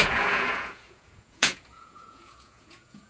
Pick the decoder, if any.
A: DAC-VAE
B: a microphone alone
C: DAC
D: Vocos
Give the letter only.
D